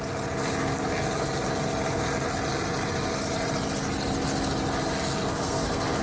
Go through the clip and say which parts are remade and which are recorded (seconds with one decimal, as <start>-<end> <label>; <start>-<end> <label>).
0.0-5.2 recorded; 5.2-6.0 remade